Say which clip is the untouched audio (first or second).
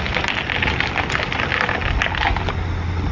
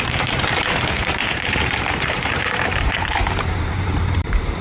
first